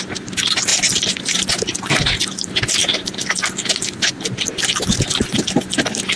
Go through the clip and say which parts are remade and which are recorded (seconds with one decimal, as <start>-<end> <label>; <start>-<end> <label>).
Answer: 0.0-6.2 recorded